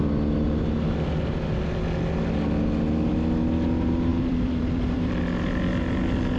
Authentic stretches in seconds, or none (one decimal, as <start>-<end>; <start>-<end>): 0.0-4.1; 5.2-6.4